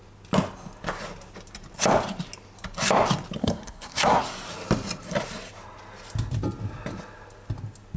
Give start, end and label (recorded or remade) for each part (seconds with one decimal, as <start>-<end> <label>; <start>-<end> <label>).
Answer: 0.0-3.4 recorded; 3.4-4.2 remade; 4.2-8.0 recorded

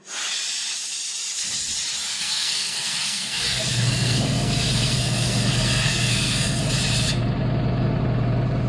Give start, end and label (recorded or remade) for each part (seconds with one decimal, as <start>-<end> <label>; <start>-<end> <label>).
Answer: 0.0-2.1 recorded; 2.1-6.6 remade; 6.6-8.7 recorded

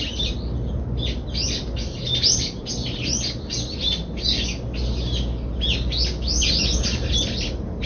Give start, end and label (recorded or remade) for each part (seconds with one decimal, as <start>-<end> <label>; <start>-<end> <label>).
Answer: 0.0-7.9 recorded

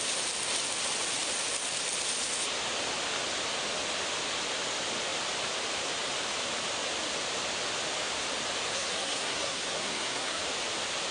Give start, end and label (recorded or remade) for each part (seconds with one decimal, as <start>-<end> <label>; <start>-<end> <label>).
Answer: 0.0-8.7 recorded; 8.7-10.4 remade; 10.4-11.1 recorded

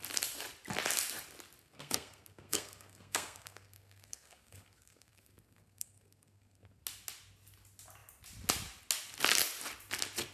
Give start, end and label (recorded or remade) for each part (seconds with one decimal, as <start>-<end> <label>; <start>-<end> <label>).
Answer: 0.0-1.6 recorded; 1.6-6.8 remade; 6.8-10.3 recorded

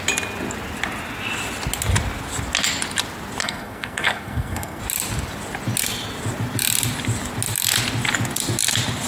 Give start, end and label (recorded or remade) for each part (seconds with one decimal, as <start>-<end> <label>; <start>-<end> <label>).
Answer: 0.0-3.4 recorded; 3.4-4.8 remade; 4.8-9.1 recorded